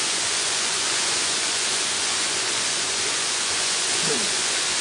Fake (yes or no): yes